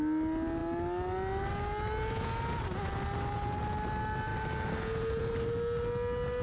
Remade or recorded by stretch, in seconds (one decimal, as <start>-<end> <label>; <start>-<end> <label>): 0.0-6.4 recorded